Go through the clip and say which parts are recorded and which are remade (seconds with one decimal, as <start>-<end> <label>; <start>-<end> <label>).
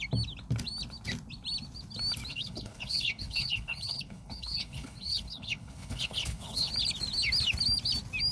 0.0-2.3 recorded; 2.3-6.7 remade; 6.7-8.3 recorded